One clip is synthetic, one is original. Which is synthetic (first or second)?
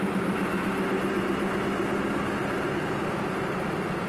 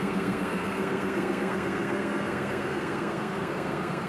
second